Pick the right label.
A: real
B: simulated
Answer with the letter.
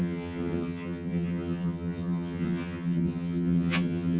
B